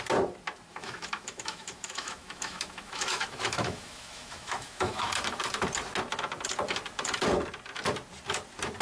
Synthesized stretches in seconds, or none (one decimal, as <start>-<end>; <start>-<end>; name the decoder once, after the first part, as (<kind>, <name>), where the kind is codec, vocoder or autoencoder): 0.7-5.4 (autoencoder, DAC-VAE)